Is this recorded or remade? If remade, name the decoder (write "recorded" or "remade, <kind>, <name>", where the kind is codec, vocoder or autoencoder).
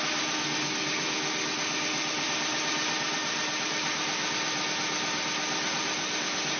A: recorded